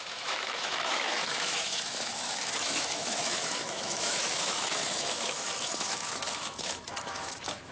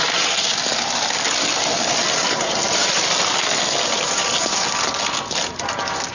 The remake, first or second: first